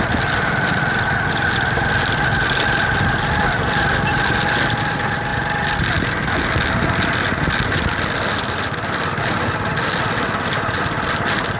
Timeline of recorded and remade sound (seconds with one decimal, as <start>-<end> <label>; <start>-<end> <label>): 0.0-11.6 recorded